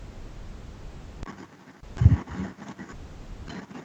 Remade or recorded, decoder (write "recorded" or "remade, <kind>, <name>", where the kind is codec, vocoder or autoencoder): recorded